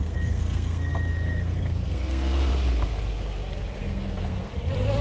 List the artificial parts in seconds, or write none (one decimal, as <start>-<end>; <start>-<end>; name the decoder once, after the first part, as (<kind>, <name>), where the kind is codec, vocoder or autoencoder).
0.0-2.5 (codec, SNAC); 3.8-4.5